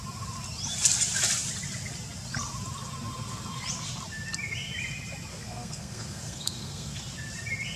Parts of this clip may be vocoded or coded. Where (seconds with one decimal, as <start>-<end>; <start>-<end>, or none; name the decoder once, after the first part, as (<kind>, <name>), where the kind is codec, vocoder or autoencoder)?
5.3-7.0 (codec, SNAC)